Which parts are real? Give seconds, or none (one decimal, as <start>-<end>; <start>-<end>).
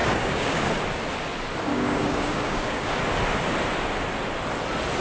0.7-1.7; 3.0-5.0